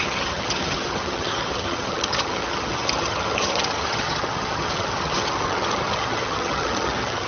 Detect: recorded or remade remade